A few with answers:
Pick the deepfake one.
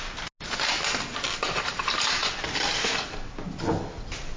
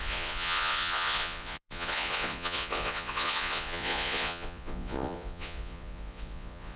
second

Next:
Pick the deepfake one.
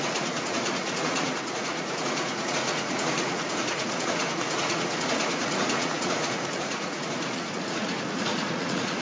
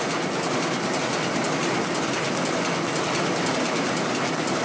first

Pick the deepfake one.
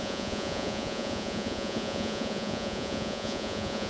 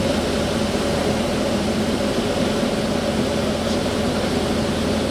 first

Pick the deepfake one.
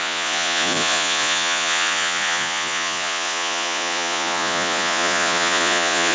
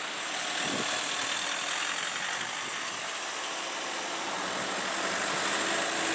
first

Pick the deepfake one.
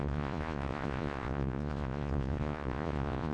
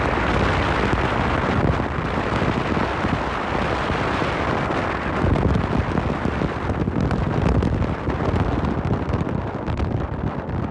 first